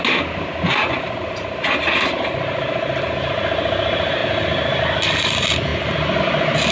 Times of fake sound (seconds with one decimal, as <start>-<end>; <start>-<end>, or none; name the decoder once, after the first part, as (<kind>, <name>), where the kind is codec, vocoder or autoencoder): none